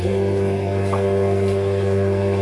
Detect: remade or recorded remade